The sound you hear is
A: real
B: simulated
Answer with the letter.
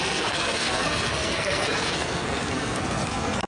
B